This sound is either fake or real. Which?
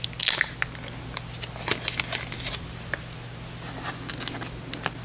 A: real